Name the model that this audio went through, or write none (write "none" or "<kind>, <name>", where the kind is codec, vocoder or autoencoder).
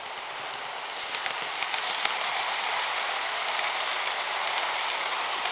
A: none